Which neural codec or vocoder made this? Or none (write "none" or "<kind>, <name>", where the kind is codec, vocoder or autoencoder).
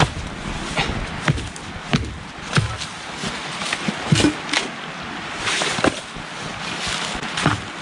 none